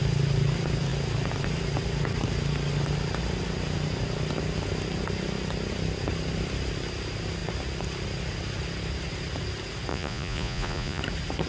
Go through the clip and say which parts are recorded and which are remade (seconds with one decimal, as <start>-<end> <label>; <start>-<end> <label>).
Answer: 0.0-9.9 recorded; 9.9-11.0 remade; 11.0-11.5 recorded